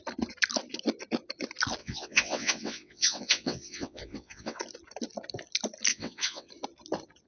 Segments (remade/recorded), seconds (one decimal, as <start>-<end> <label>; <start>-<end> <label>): 0.0-1.8 recorded; 1.8-4.6 remade; 4.6-5.9 recorded; 5.9-6.5 remade; 6.5-7.3 recorded